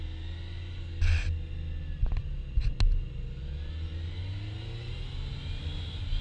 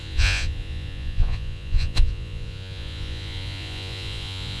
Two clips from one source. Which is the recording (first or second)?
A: first